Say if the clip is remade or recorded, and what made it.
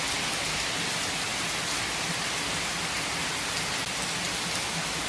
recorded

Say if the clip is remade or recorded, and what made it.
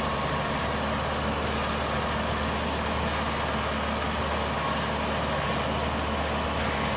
recorded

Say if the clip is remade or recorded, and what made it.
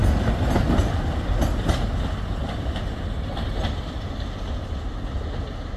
recorded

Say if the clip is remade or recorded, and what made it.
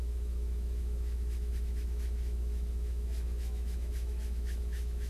remade, autoencoder, DAC-VAE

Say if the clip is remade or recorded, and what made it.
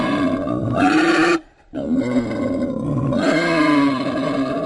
remade, vocoder, BigVGAN v2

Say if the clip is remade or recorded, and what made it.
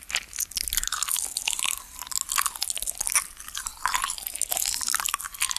recorded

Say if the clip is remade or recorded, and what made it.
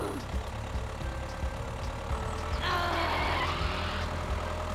recorded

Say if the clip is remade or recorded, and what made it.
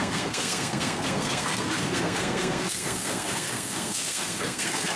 remade, codec, SNAC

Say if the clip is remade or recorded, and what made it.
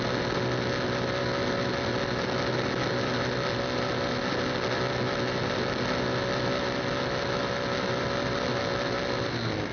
recorded